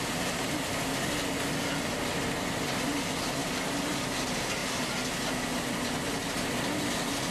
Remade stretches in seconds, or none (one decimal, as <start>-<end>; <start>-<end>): none